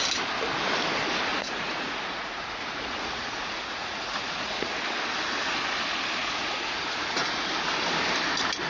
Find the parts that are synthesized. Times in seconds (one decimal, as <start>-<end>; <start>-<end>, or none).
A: 1.3-4.7; 6.2-7.5